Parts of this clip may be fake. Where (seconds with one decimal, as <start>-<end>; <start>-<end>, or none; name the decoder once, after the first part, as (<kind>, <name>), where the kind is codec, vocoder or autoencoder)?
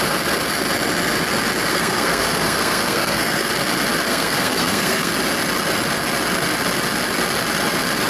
1.7-3.5 (codec, SNAC); 4.1-5.1